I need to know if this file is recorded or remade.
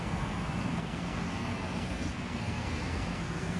remade